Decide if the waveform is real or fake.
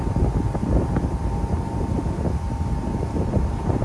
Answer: real